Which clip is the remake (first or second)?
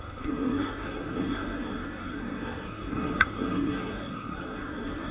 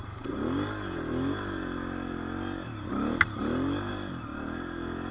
first